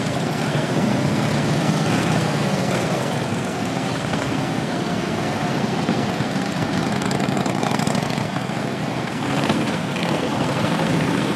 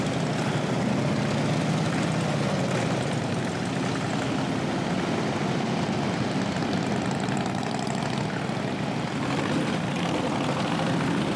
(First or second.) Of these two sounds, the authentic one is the second